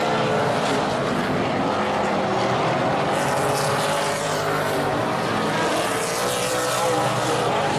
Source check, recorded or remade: recorded